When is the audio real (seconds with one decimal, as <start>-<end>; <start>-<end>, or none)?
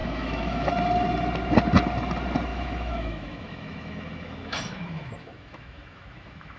0.7-2.5